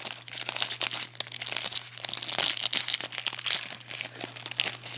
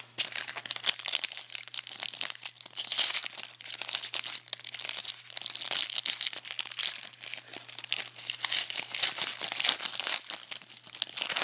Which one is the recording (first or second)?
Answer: first